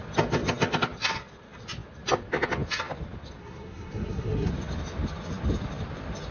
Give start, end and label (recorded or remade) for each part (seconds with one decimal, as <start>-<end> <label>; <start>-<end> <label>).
0.0-3.4 recorded; 3.4-4.5 remade; 4.5-6.3 recorded